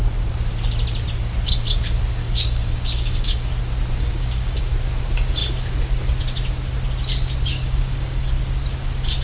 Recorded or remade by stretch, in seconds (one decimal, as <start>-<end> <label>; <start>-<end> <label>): 0.0-2.2 recorded; 2.2-3.5 remade; 3.5-4.0 recorded; 4.0-4.7 remade; 4.7-7.5 recorded; 7.5-8.3 remade; 8.3-9.2 recorded